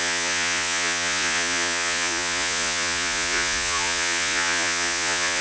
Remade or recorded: remade